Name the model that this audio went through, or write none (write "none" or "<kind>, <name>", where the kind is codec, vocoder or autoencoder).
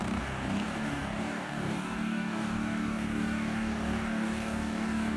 codec, DAC